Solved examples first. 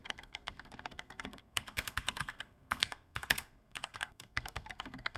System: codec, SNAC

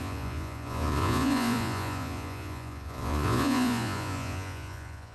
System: vocoder, Vocos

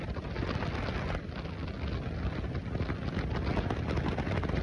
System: none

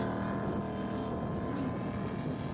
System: none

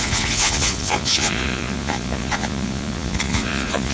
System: vocoder, Vocos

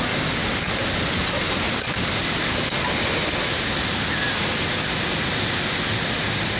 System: none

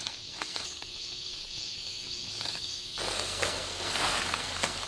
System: codec, SNAC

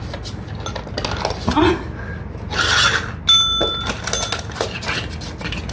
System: none